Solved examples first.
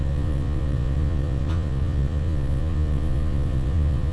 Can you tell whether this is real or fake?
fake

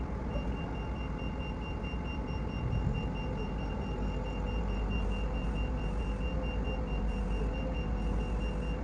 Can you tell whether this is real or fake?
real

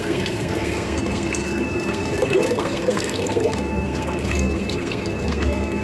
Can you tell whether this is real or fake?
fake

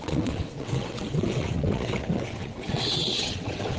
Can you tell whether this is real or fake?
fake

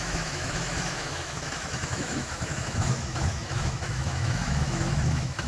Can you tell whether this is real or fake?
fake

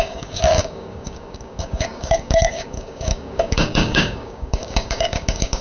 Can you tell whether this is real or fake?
fake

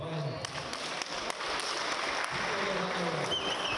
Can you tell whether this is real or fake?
real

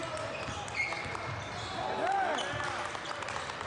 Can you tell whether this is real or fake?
real